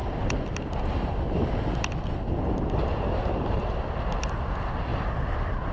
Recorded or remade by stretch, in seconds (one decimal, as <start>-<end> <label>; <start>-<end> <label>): 0.0-5.7 recorded